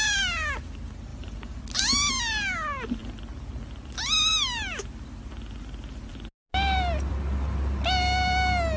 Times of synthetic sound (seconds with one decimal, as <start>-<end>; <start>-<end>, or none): 1.1-1.6

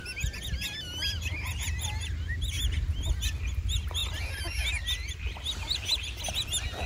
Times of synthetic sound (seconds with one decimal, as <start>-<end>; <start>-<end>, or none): none

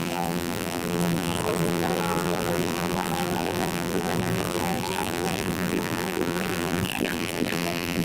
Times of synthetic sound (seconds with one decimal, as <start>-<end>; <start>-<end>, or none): 0.0-8.0

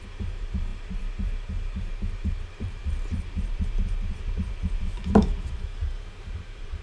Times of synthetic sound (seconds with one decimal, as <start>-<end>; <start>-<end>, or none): 0.0-6.8

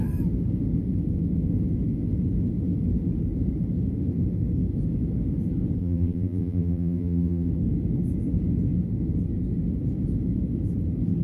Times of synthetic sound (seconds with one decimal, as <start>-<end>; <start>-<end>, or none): 5.8-7.5

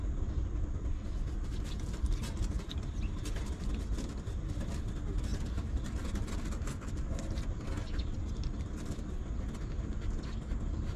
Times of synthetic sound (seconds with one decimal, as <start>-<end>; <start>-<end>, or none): 3.2-3.7; 5.3-6.9; 7.8-8.8

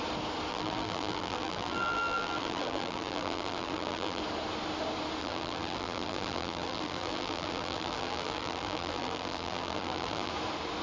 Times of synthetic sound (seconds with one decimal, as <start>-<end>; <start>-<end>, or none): 0.5-4.2; 5.2-10.3